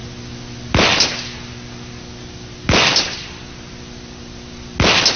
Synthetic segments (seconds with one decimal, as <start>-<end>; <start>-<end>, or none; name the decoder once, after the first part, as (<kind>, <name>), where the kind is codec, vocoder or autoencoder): none